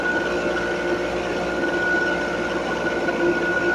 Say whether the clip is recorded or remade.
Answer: recorded